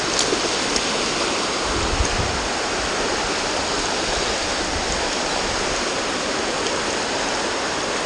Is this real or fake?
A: real